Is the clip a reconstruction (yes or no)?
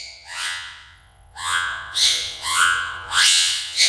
yes